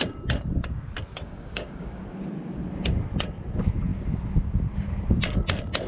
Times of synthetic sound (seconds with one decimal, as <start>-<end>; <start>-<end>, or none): 1.1-2.0